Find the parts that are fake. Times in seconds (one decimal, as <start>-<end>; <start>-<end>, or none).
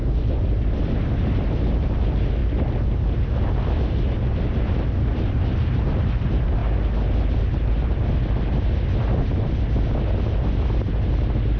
none